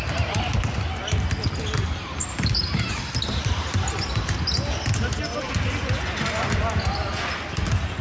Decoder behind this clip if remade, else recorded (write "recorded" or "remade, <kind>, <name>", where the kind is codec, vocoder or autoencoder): recorded